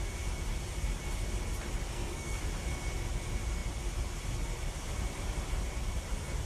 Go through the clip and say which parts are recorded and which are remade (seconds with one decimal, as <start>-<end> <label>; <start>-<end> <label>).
0.0-1.9 recorded; 1.9-2.4 remade; 2.4-6.5 recorded